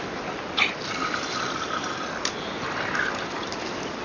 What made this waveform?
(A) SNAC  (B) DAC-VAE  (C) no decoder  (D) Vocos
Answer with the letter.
C